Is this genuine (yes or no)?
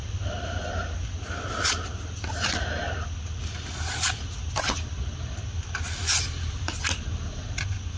no